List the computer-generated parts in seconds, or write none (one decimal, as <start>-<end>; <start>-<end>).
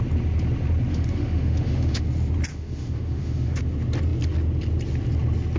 0.9-2.0; 2.5-3.6